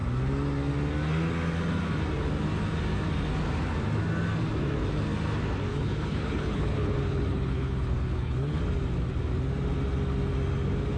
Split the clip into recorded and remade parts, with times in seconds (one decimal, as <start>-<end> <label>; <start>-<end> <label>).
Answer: 0.0-5.7 recorded; 5.7-8.6 remade; 8.6-11.0 recorded